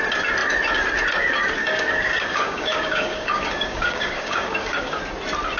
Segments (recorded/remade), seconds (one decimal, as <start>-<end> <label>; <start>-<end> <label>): 0.0-1.6 recorded; 1.6-5.0 remade; 5.0-5.6 recorded